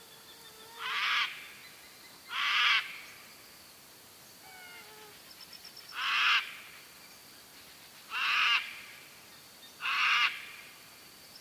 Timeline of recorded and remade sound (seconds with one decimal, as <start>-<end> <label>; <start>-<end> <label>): 0.0-7.5 recorded; 7.5-11.4 remade